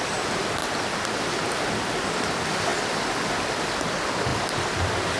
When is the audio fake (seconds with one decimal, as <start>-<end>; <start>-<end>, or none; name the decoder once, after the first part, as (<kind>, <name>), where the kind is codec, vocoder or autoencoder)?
0.6-1.3 (vocoder, BigVGAN v2)